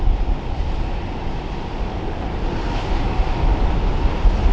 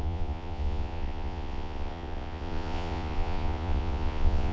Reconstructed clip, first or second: second